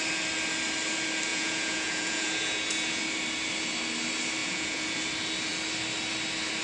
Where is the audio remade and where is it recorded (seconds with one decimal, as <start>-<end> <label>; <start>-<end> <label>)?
0.0-1.3 recorded; 1.3-3.0 remade; 3.0-4.4 recorded; 4.4-5.0 remade; 5.0-6.6 recorded